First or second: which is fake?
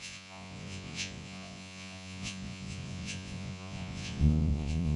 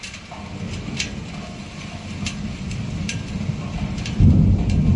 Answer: first